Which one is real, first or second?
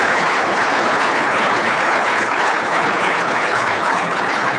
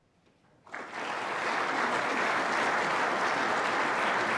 second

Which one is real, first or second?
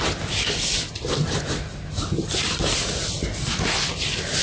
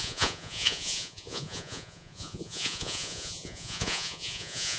first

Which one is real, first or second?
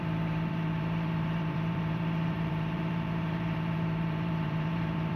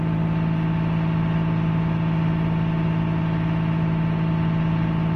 second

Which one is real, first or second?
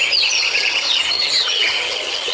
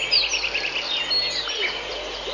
second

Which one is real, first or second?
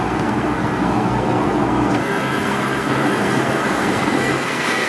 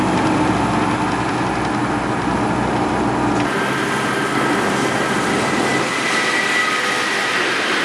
second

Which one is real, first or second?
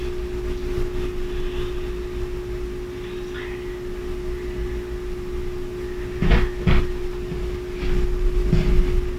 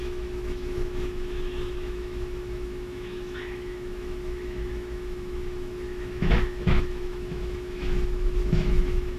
first